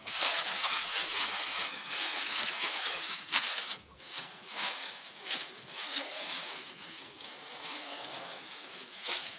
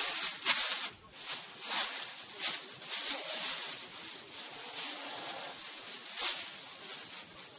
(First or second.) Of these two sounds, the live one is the second